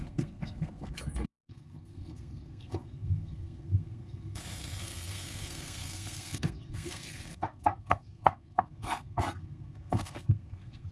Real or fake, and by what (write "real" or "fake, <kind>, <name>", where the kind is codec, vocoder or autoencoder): fake, codec, SNAC